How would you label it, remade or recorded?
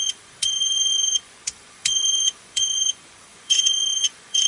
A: remade